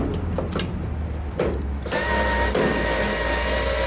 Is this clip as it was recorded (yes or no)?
yes